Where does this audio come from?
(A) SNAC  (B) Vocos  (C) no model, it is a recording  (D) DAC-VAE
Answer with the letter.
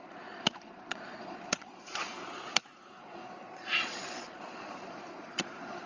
B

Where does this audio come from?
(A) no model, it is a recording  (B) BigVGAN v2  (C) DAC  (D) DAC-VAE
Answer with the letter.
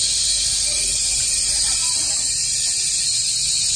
A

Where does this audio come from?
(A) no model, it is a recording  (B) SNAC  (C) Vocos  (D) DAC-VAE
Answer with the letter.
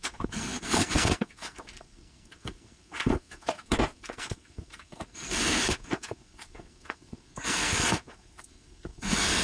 B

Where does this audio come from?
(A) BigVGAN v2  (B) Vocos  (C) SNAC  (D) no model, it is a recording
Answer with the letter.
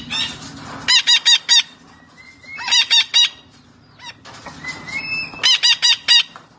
D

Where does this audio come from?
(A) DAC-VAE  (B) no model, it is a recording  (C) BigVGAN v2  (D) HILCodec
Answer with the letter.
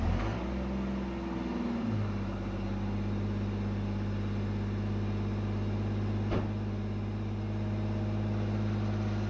B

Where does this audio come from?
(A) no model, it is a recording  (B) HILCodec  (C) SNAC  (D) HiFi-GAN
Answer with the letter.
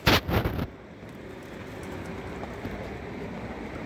A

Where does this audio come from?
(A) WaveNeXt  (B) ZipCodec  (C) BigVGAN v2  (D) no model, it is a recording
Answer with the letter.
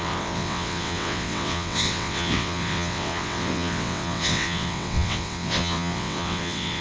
A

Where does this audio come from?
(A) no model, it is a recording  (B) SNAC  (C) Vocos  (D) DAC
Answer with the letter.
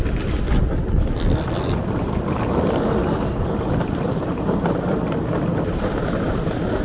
A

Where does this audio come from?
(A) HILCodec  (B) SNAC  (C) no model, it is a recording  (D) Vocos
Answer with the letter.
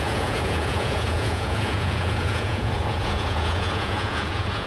D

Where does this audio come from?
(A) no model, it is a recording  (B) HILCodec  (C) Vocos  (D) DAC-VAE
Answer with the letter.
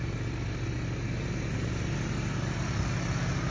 A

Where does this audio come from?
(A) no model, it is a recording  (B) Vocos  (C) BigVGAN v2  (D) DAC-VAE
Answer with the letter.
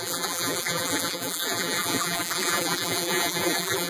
C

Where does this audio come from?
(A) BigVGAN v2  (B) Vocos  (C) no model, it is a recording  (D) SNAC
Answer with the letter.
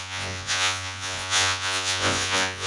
B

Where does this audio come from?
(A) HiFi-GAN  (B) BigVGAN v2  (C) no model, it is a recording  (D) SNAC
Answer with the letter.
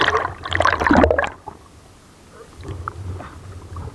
C